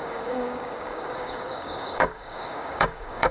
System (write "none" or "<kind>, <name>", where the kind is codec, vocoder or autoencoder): codec, DAC